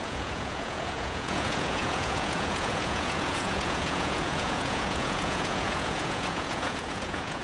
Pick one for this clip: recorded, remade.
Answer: remade